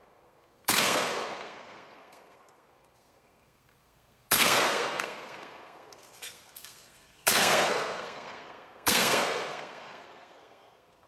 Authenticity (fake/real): fake